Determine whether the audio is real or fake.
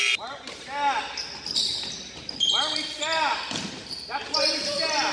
real